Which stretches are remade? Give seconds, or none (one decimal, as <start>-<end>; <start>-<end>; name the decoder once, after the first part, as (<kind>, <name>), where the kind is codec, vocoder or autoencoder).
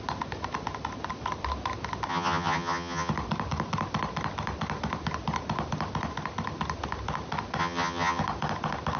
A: 2.1-3.1 (vocoder, HiFi-GAN); 7.6-8.2